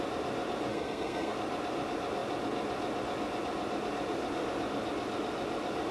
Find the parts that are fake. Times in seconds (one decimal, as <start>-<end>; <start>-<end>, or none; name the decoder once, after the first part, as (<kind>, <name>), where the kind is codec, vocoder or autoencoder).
0.7-1.3 (codec, SNAC)